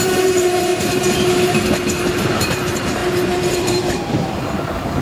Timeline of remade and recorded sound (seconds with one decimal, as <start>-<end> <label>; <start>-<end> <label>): 0.0-0.7 remade; 0.7-2.1 recorded; 2.1-3.0 remade; 3.0-3.5 recorded; 3.5-5.0 remade